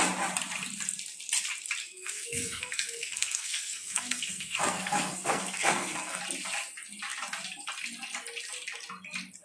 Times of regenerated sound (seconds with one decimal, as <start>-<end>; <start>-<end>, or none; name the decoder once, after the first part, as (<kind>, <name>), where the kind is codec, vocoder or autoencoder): 1.8-6.2 (codec, SNAC)

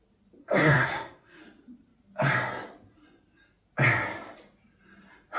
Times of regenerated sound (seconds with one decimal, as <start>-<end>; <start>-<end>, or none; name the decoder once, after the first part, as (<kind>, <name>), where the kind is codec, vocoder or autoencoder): 0.4-1.4 (codec, SNAC)

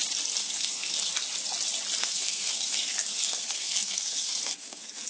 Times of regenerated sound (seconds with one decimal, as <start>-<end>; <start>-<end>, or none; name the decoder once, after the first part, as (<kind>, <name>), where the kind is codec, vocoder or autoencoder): 0.4-1.1 (codec, SNAC); 2.0-5.1

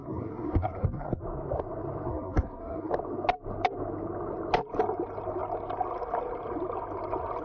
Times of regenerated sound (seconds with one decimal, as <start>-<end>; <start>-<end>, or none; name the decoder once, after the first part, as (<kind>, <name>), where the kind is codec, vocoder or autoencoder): 0.0-1.2 (codec, SNAC); 2.1-2.9

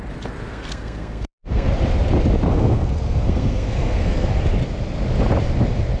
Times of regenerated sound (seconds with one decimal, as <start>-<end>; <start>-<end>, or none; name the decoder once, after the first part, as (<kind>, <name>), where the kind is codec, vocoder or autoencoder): 0.5-1.7 (codec, SNAC); 2.5-4.3